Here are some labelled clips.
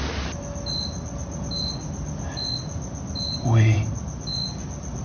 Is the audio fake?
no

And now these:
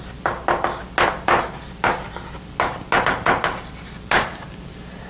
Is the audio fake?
no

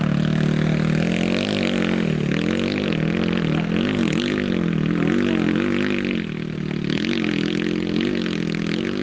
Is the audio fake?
no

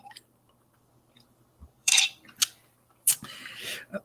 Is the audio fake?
yes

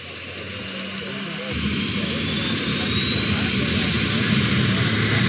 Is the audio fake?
no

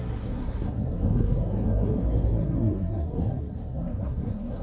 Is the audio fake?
yes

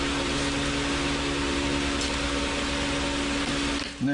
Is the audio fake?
no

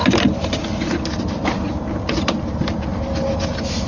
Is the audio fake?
yes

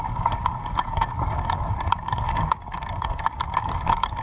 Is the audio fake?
yes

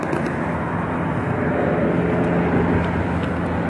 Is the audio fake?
no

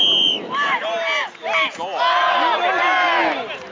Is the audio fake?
no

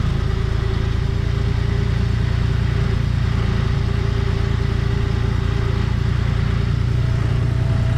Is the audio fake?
no